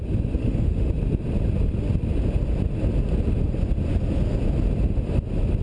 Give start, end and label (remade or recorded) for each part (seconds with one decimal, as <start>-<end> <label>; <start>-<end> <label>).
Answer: 0.0-0.4 recorded; 0.4-0.9 remade; 0.9-5.6 recorded